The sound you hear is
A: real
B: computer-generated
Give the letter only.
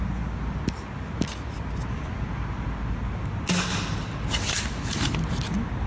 A